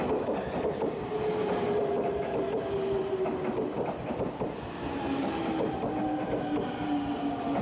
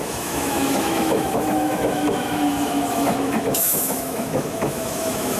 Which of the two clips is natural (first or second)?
first